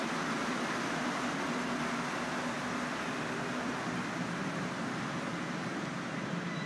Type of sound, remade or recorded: recorded